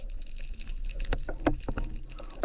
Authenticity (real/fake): real